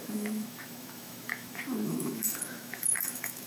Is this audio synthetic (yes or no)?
yes